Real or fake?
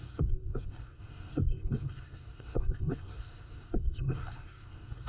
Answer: fake